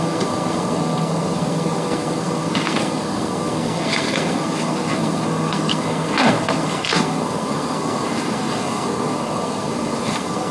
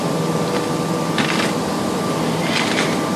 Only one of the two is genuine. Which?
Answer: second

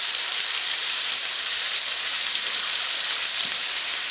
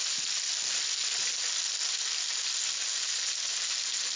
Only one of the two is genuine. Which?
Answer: second